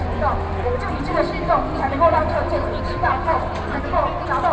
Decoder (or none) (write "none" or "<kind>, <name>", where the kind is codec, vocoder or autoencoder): none